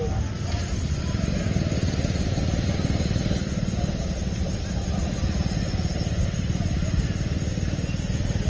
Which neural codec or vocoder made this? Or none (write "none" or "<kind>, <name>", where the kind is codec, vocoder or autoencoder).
none